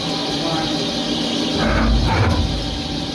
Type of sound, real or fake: real